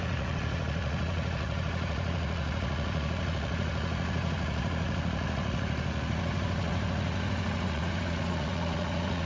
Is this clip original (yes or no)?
no